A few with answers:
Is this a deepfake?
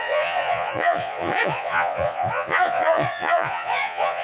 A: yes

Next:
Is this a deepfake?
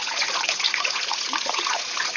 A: yes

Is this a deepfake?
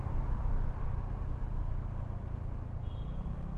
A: no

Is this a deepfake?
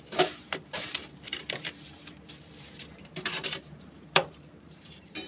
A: yes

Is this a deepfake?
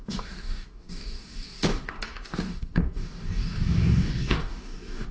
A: yes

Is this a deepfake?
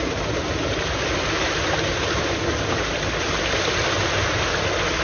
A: no